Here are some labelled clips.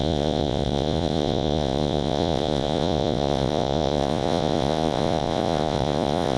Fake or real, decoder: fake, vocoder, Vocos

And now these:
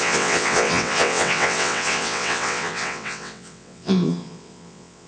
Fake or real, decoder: fake, vocoder, WaveNeXt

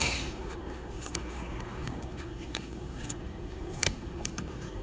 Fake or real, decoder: fake, codec, SNAC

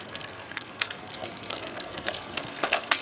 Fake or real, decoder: fake, codec, SNAC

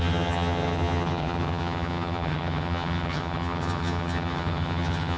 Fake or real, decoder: fake, vocoder, HiFi-GAN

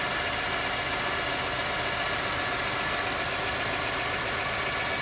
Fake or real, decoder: real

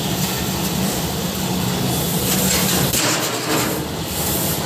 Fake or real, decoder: fake, vocoder, BigVGAN v2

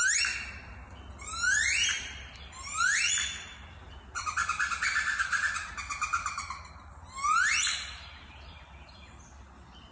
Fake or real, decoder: real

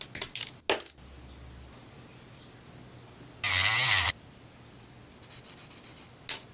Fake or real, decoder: real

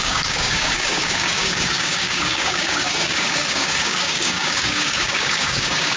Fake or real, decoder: fake, codec, DAC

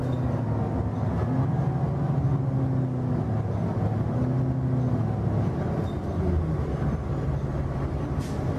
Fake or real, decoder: real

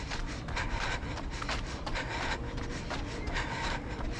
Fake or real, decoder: real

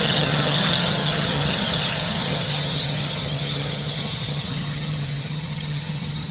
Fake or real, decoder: fake, vocoder, HiFi-GAN